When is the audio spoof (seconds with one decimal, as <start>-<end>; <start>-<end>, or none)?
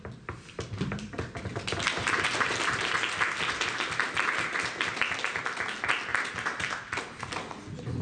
none